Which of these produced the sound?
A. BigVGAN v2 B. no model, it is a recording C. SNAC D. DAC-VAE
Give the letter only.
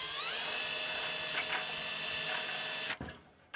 B